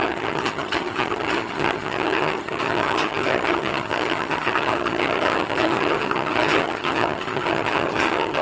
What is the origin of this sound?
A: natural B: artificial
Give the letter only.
B